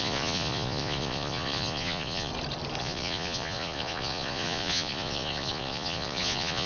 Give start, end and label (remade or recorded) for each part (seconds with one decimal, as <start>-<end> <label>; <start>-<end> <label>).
0.0-2.3 remade; 2.3-2.8 recorded; 2.8-6.7 remade